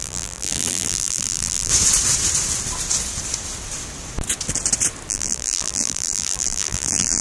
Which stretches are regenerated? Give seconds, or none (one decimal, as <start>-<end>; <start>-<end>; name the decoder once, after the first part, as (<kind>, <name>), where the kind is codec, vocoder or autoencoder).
0.0-1.7 (vocoder, BigVGAN v2); 5.1-7.2